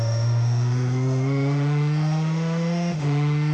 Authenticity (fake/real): fake